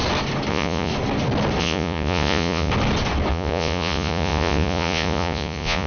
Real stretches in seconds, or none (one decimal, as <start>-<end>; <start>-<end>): 0.0-0.5; 0.9-1.6; 2.7-3.3